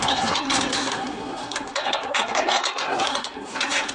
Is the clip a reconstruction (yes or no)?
yes